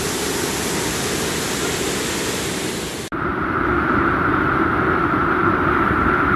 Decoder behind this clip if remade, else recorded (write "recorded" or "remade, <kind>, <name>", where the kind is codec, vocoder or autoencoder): recorded